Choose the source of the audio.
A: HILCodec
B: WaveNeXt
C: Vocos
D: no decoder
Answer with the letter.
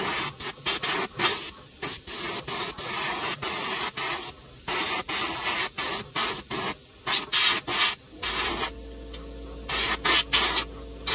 D